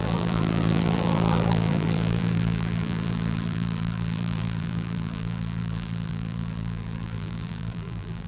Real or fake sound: fake